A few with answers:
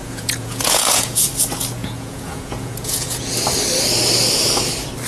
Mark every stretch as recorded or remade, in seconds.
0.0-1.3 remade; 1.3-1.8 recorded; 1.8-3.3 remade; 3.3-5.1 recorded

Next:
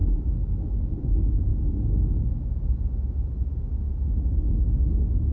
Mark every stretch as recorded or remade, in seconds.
0.0-5.3 recorded

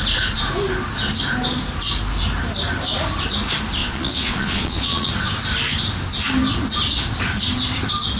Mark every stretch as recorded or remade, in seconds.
0.0-3.8 recorded; 3.8-5.1 remade; 5.1-8.2 recorded

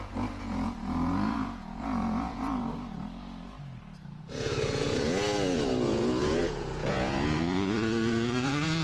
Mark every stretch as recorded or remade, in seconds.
0.0-2.6 remade; 2.6-4.2 recorded; 4.2-8.8 remade

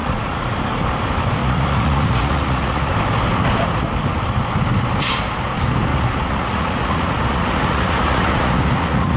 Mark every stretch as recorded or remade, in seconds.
0.0-0.6 remade; 0.6-1.4 recorded; 1.4-2.9 remade; 2.9-5.9 recorded; 5.9-9.2 remade

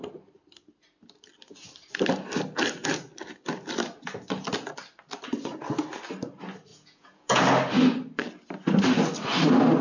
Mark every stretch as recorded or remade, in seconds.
0.0-6.7 recorded; 6.7-7.4 remade; 7.4-9.8 recorded